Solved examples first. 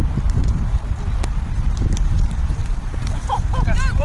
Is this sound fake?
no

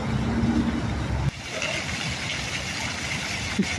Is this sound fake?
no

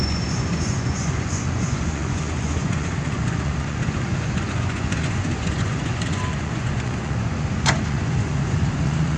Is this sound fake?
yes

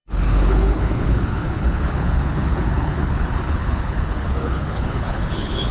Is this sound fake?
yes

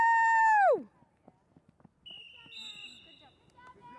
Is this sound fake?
no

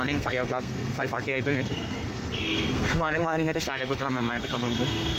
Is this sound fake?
yes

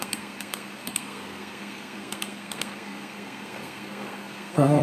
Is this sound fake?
yes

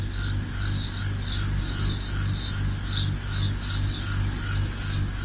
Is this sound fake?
no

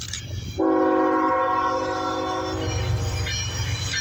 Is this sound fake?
no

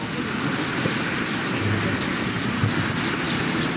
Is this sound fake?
yes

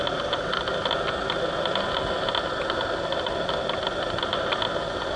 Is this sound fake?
no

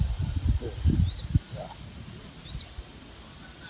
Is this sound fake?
no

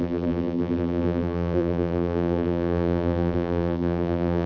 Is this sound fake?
yes